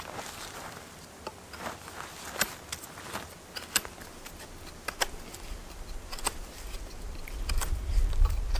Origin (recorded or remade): recorded